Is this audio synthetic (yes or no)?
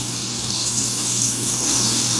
yes